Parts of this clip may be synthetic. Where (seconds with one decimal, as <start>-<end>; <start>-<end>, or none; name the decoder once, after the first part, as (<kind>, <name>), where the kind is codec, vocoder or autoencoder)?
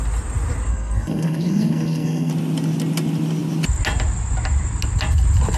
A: 0.7-2.3 (codec, SNAC)